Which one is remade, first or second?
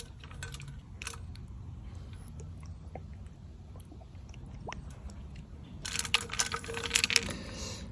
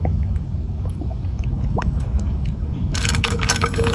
second